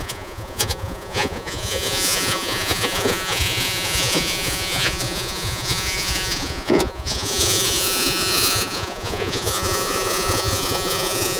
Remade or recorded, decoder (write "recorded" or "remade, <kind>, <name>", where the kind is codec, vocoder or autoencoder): remade, vocoder, Vocos